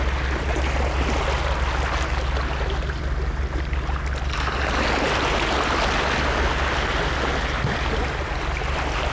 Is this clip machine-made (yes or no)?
no